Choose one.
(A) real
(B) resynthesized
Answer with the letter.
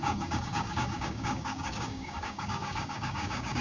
B